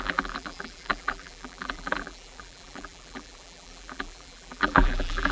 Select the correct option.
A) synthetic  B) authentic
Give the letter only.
A